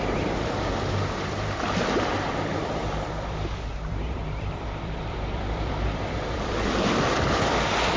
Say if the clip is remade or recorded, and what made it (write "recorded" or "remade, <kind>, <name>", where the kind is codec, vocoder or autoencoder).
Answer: remade, vocoder, BigVGAN v2